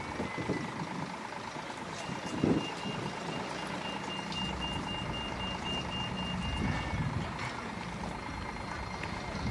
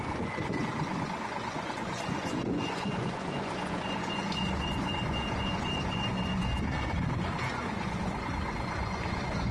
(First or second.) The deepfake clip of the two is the second